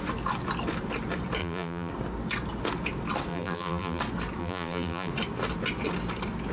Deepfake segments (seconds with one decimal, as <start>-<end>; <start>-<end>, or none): 1.4-1.9; 3.3-4.0; 4.4-5.1